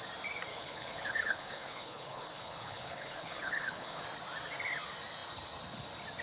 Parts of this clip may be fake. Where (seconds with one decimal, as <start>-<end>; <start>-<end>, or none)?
0.5-4.0